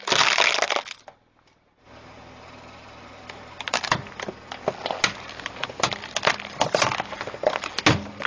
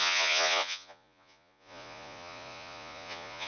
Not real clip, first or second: second